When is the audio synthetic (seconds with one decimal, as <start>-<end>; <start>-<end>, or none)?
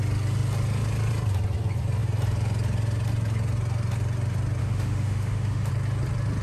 4.6-5.7